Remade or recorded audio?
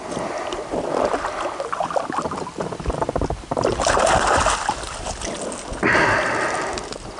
recorded